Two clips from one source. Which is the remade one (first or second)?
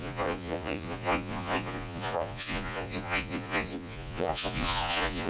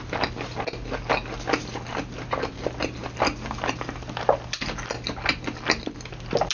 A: first